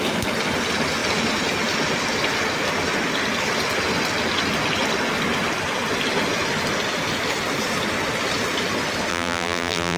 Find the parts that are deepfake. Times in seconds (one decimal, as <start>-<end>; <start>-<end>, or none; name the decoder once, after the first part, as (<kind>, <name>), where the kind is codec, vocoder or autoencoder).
9.1-10.0 (vocoder, BigVGAN v2)